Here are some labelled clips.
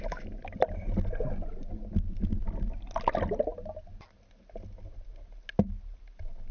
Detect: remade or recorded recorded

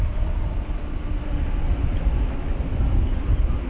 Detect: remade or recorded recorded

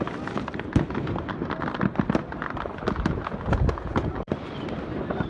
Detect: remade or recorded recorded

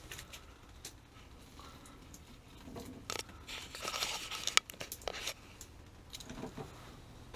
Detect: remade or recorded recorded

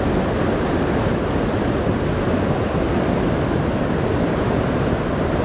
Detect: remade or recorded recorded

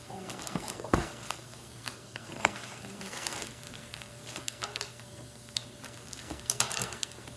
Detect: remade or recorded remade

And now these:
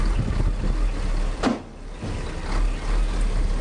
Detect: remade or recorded recorded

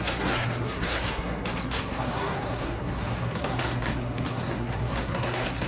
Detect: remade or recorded remade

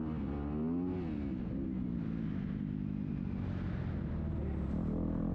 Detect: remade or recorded recorded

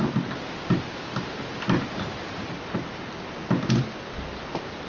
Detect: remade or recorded recorded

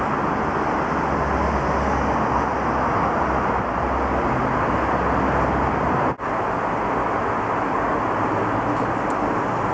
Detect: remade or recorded recorded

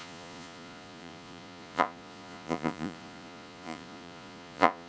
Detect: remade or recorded remade